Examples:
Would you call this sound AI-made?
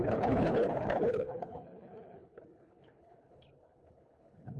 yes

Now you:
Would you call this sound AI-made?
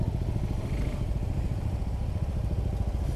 no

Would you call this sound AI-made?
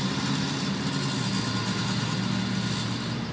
no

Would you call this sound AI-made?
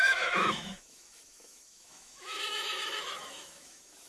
yes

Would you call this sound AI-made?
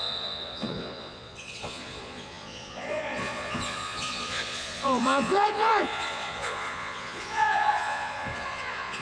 yes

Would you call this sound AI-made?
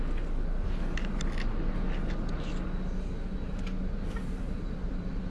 no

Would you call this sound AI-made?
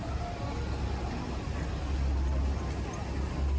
no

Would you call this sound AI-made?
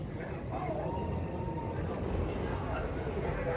no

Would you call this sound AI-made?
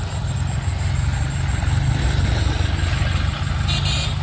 no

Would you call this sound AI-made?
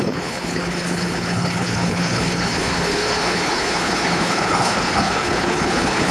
yes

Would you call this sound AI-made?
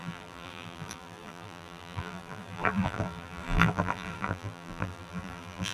yes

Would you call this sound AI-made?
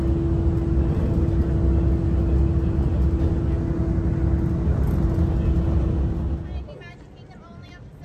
no